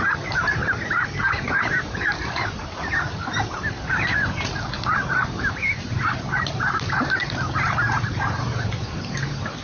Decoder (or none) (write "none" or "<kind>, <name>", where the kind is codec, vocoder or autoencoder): vocoder, BigVGAN v2